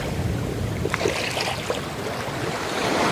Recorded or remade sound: recorded